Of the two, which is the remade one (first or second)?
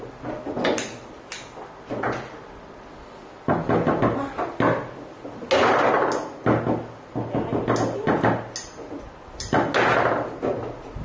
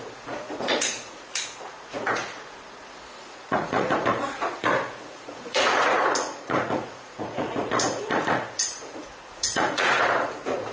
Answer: second